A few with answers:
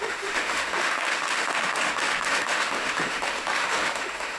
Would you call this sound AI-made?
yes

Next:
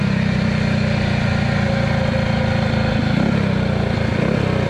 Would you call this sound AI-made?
no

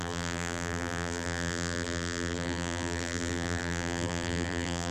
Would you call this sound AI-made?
yes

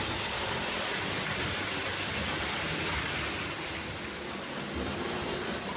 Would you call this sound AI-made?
no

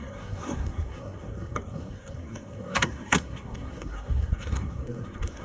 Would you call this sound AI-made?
yes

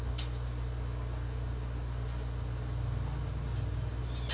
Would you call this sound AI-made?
no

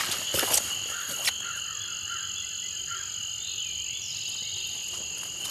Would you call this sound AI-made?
no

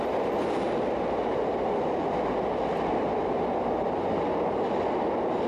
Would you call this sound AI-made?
no